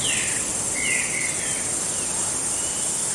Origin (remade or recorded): recorded